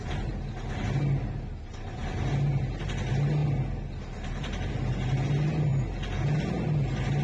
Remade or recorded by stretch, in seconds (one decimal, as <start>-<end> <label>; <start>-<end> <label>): 0.0-7.2 recorded